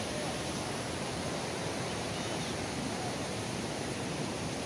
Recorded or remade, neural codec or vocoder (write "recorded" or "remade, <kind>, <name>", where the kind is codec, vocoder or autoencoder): remade, vocoder, BigVGAN v2